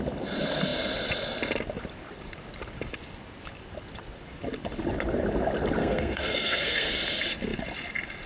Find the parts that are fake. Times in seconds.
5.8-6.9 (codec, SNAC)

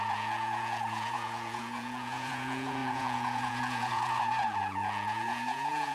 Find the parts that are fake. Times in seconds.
0.0-5.9 (vocoder, Vocos)

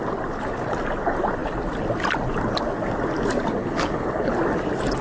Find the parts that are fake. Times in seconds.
3.6-4.3 (codec, HILCodec)

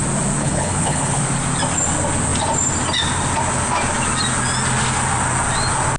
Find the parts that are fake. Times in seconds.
0.4-1.2 (codec, HILCodec)

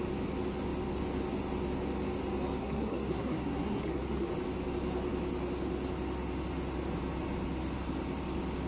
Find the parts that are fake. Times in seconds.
2.6-4.3 (codec, SNAC)